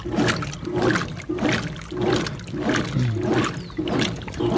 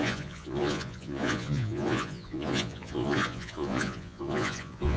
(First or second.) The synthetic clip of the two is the second